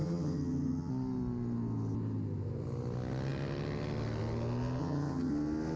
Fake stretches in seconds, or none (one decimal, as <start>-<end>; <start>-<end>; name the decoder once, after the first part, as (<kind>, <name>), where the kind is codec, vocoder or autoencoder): 0.0-0.9 (vocoder, HiFi-GAN); 4.8-5.3